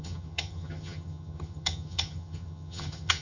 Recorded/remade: remade